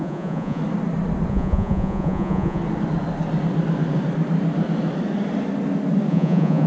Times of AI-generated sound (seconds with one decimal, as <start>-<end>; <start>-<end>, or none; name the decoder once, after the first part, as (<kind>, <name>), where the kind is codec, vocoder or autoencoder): 0.0-0.6 (vocoder, Vocos); 1.3-2.6; 6.1-6.7